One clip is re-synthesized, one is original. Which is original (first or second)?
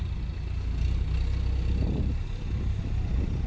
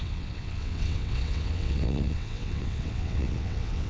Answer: first